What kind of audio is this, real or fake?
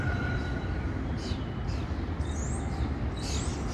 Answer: real